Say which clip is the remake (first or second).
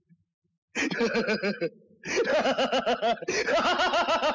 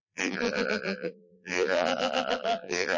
second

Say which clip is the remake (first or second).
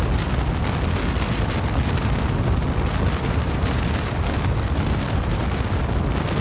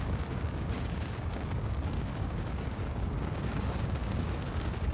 second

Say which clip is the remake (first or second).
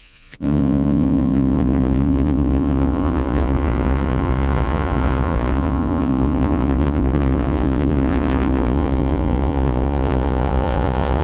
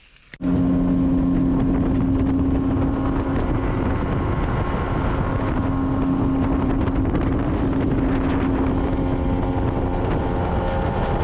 first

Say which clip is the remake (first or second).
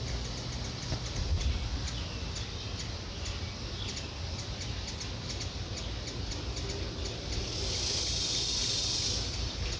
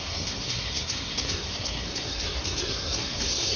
second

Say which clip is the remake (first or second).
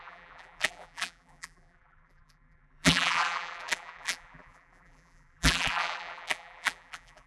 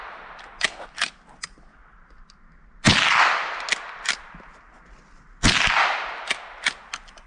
first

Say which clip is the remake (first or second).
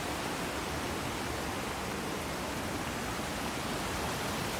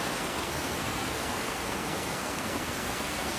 second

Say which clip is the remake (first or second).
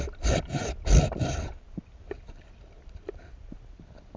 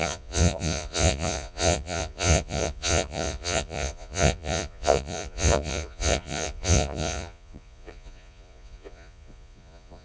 second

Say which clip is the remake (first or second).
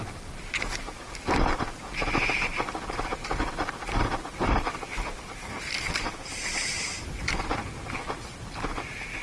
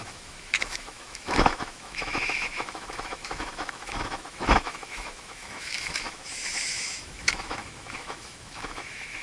second